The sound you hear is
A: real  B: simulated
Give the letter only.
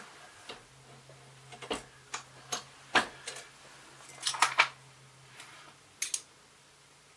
A